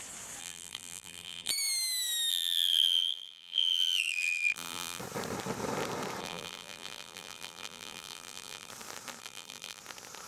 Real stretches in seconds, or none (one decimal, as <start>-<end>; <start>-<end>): 0.0-0.4; 1.5-2.3; 5.0-6.2; 8.7-9.2; 9.8-10.3